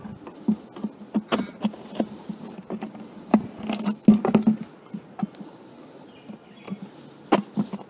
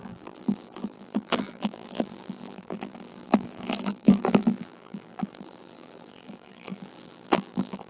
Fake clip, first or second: second